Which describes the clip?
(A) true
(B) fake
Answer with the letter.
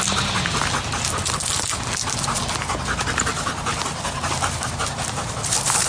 A